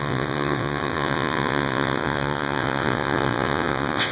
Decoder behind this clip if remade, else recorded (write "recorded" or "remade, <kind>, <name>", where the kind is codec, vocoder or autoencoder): remade, vocoder, WaveNeXt